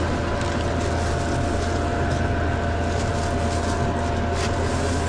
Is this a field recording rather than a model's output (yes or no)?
yes